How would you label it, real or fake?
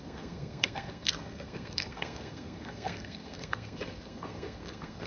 fake